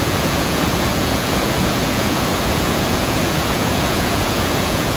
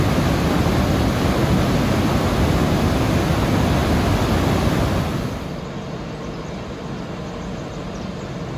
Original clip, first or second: second